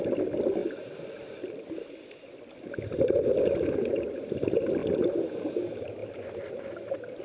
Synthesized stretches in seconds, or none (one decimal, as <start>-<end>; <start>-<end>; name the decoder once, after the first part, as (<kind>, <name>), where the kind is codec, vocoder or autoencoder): none